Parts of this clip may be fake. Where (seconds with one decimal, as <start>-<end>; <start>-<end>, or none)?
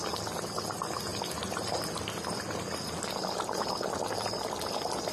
none